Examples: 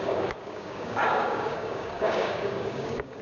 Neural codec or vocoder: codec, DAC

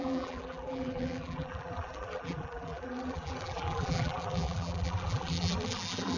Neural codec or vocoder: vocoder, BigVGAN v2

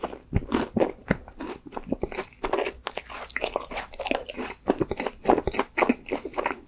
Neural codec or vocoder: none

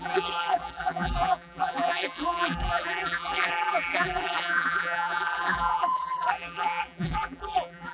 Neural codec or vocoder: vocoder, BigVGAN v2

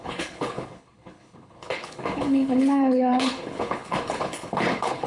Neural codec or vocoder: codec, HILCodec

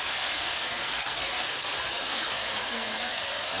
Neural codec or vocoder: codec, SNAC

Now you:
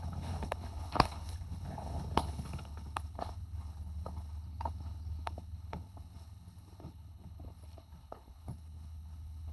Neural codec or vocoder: codec, HILCodec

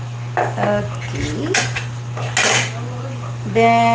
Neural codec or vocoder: none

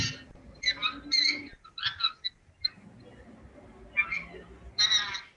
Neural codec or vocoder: none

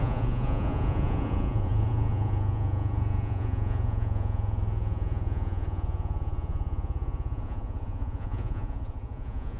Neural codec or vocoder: vocoder, Vocos